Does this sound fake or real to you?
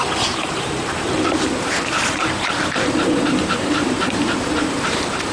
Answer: fake